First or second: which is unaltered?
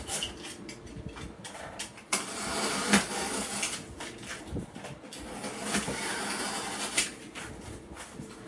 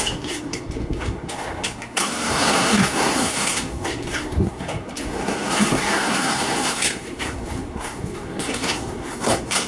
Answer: first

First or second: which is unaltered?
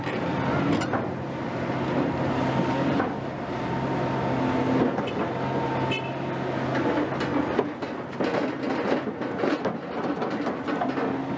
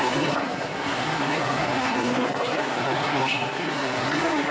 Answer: first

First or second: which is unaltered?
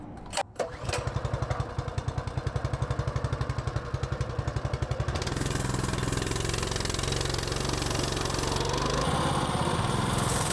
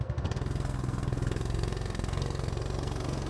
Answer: first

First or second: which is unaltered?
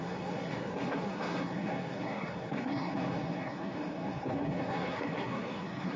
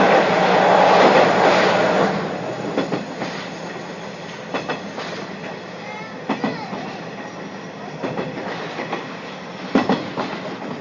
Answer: second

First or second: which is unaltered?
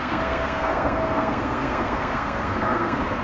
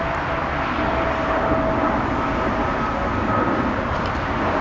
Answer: second